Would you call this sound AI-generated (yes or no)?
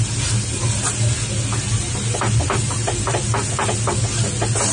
no